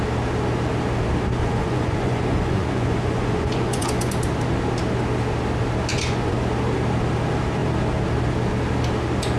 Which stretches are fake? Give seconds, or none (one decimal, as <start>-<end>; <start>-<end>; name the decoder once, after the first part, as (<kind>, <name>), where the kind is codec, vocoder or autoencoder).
1.4-4.1 (vocoder, Vocos); 5.9-6.4